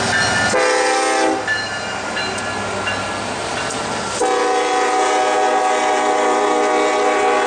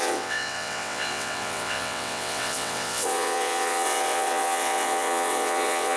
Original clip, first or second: first